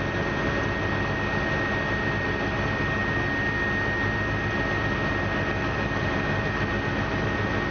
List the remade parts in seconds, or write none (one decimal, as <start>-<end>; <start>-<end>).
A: none